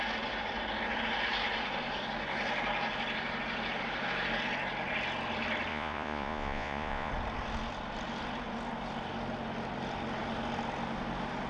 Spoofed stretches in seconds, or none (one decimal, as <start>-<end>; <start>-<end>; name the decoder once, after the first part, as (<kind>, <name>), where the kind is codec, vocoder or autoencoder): 5.7-7.1 (vocoder, Vocos)